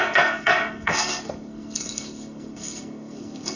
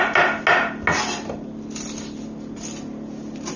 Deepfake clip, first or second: first